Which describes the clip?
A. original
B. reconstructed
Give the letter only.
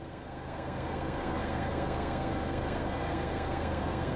B